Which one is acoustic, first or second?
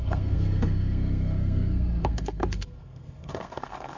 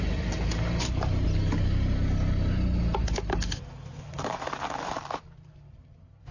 second